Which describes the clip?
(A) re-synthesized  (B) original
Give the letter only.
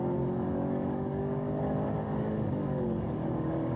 A